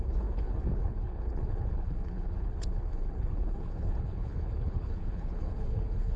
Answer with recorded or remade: remade